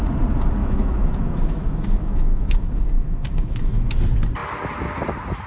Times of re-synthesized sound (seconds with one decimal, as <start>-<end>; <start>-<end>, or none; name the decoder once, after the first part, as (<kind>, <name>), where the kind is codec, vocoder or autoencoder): 0.6-3.9 (autoencoder, DAC-VAE)